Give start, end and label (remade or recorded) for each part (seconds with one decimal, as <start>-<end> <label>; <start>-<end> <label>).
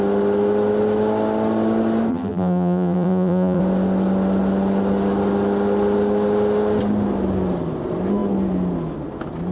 0.0-2.1 recorded; 2.1-3.6 remade; 3.6-9.5 recorded